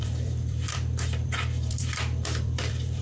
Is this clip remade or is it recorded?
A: remade